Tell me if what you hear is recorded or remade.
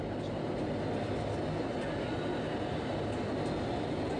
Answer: recorded